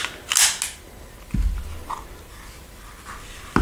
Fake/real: real